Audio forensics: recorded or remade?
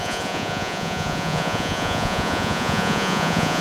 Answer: remade